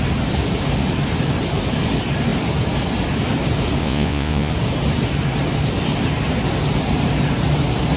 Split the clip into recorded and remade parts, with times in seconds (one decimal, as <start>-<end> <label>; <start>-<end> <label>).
0.0-3.8 recorded; 3.8-4.5 remade; 4.5-8.0 recorded

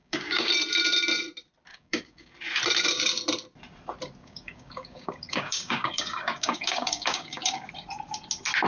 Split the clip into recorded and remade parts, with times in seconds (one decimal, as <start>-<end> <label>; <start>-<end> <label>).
0.0-0.5 remade; 0.5-1.7 recorded; 1.7-2.3 remade; 2.3-4.2 recorded; 4.2-7.7 remade; 7.7-8.7 recorded

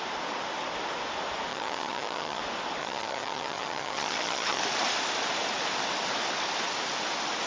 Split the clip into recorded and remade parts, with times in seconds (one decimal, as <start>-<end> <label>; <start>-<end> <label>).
0.0-1.5 recorded; 1.5-2.4 remade; 2.4-2.8 recorded; 2.8-4.6 remade; 4.6-7.5 recorded